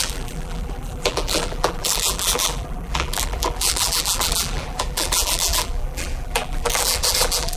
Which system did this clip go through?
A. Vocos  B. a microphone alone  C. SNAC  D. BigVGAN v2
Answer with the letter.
D